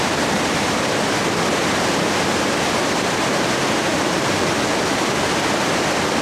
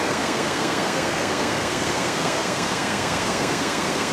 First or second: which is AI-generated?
second